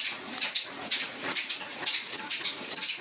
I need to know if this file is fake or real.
fake